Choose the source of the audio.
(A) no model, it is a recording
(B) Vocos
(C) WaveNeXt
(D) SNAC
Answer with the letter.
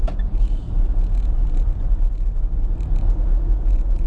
A